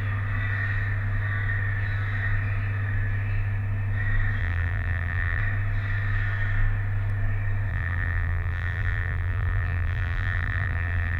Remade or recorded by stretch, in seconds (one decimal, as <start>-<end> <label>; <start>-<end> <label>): 0.0-4.4 recorded; 4.4-5.4 remade; 5.4-7.7 recorded; 7.7-11.2 remade